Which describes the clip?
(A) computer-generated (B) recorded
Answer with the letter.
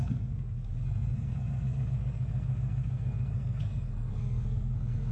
A